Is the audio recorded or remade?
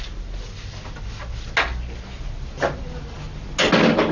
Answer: recorded